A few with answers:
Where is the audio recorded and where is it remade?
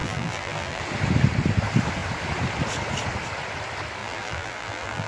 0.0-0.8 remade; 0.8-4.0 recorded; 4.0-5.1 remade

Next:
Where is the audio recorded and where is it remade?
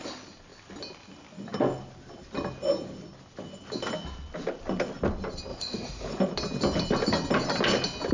0.0-5.5 recorded; 5.5-6.2 remade; 6.2-8.1 recorded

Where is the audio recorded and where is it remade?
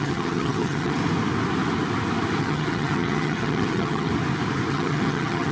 0.0-1.0 remade; 1.0-2.4 recorded; 2.4-4.1 remade; 4.1-4.7 recorded; 4.7-5.5 remade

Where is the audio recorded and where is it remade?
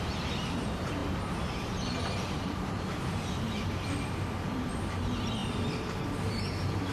0.0-6.9 remade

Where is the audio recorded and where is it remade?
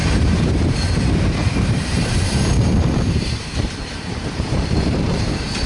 0.0-5.7 remade